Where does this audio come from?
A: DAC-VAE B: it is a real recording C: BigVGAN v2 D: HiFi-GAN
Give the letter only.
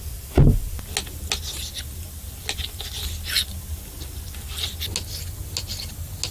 B